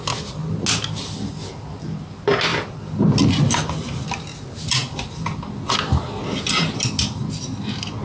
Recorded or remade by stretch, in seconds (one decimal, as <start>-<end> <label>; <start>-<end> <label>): 0.0-8.0 recorded